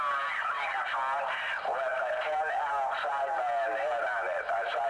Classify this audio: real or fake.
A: real